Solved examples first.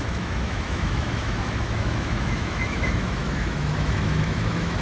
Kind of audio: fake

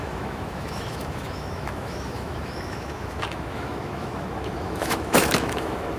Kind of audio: fake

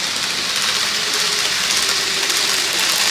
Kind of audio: real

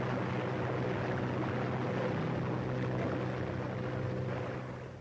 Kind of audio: real